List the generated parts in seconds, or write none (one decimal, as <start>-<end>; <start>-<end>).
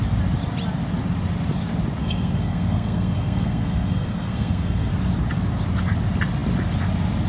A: 2.0-4.9